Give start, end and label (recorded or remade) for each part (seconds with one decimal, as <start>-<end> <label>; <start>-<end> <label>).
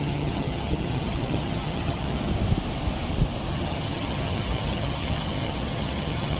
0.0-2.3 remade; 2.3-3.5 recorded; 3.5-6.4 remade